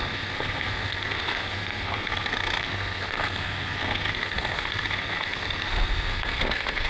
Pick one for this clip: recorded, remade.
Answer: remade